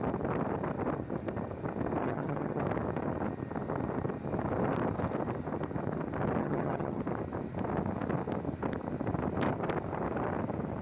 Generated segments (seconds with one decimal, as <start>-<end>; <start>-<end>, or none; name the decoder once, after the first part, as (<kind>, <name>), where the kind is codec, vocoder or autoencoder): 2.0-2.6 (vocoder, HiFi-GAN); 6.4-7.0